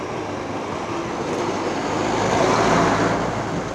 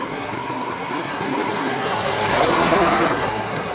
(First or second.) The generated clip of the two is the second